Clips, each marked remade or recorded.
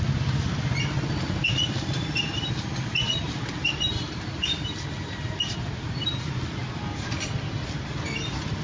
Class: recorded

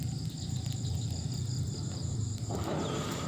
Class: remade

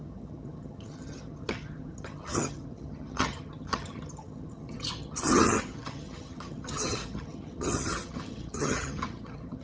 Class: remade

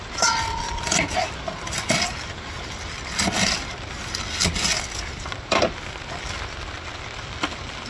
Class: recorded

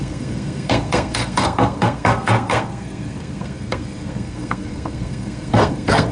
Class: remade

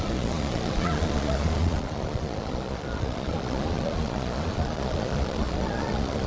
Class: remade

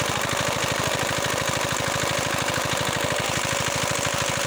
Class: recorded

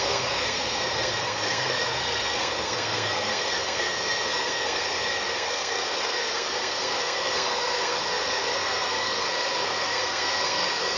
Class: remade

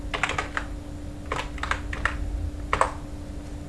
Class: recorded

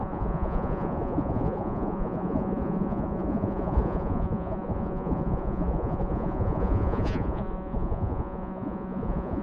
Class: remade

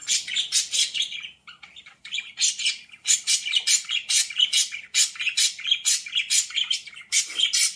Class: remade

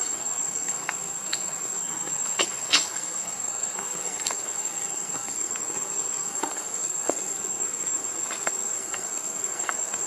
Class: remade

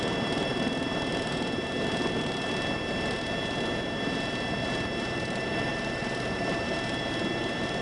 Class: remade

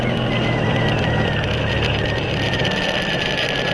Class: remade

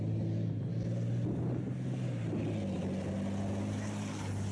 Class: recorded